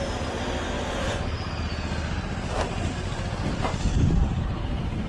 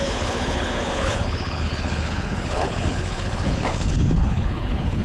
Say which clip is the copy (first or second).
second